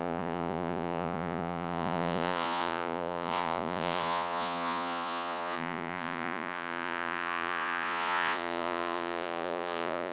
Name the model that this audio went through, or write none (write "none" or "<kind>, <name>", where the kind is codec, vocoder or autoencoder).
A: vocoder, Vocos